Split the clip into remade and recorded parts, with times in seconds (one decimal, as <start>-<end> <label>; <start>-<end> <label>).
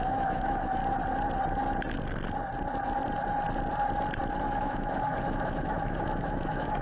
0.0-0.8 remade; 0.8-4.4 recorded; 4.4-6.8 remade